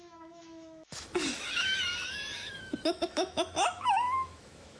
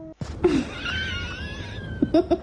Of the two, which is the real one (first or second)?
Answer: second